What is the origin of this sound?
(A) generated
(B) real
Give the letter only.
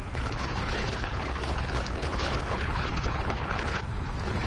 A